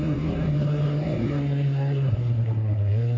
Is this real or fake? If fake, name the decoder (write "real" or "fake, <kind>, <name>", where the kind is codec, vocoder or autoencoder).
fake, codec, SNAC